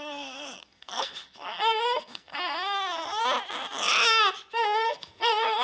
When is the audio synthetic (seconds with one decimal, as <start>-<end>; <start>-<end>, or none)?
0.0-3.2; 4.5-5.6